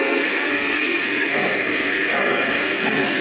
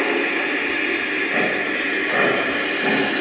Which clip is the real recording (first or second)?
second